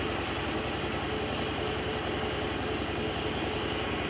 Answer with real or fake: real